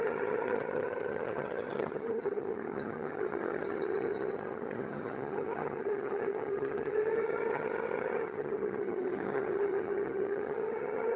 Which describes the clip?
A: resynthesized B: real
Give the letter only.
A